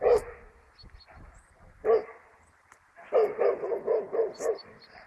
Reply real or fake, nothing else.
real